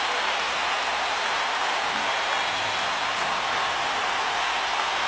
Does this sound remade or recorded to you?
recorded